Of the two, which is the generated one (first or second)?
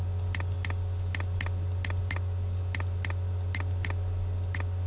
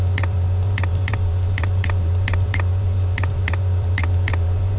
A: second